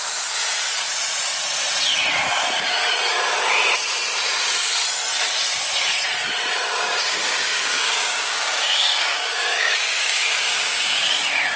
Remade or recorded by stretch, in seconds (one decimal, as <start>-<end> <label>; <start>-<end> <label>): 0.0-6.8 recorded; 6.8-11.2 remade; 11.2-11.6 recorded